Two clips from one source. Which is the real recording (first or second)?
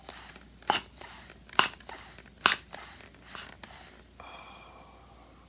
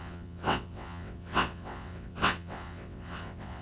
first